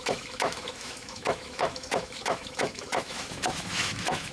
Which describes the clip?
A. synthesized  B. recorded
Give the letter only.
A